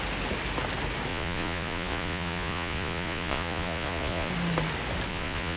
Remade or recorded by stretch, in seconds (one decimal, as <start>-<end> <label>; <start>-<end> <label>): 0.0-1.1 recorded; 1.1-4.3 remade; 4.3-5.1 recorded; 5.1-5.6 remade